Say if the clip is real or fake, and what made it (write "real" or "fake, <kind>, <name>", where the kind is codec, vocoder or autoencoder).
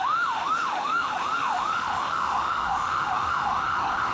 fake, autoencoder, DAC-VAE